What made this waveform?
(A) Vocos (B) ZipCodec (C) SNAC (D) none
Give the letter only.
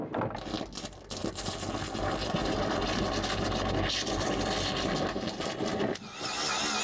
D